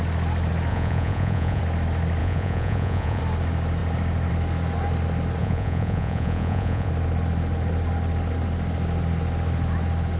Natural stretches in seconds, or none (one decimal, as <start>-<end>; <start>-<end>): 0.0-0.7; 1.6-2.2; 3.2-5.4; 6.9-10.2